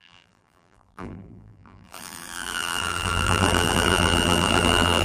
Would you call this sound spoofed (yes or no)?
yes